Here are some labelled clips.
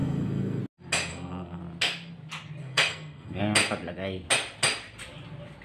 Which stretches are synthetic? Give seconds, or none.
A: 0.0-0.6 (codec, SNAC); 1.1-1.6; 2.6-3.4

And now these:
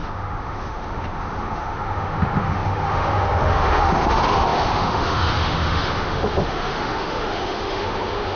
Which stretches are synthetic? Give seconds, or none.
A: 0.0-8.4 (autoencoder, DAC-VAE)

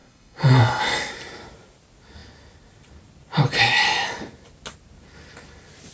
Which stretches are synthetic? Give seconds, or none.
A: 0.0-1.1 (codec, SNAC)

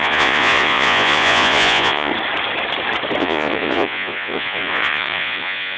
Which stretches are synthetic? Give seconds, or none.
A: 0.0-2.1 (vocoder, Vocos); 3.2-5.8

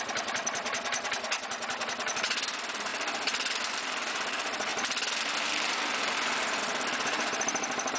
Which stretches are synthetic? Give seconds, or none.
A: 0.0-2.9 (vocoder, BigVGAN v2); 4.1-4.7; 6.6-8.0

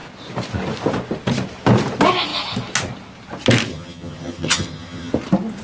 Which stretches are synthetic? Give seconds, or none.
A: 3.7-5.1 (vocoder, HiFi-GAN)